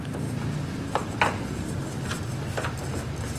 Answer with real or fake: real